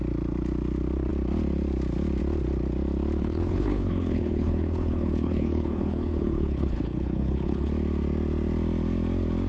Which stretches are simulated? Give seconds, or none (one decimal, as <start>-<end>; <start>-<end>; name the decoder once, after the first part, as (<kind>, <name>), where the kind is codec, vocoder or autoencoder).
3.2-7.7 (codec, HILCodec)